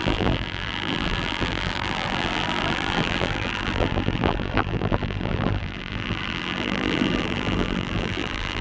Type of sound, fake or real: fake